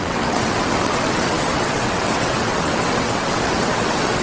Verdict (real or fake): fake